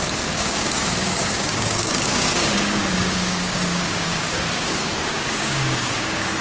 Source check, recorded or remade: remade